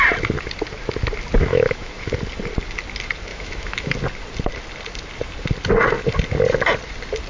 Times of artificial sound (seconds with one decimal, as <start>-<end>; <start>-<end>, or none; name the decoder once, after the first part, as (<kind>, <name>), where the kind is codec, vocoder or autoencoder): 1.5-2.1 (autoencoder, DAC-VAE); 3.3-3.9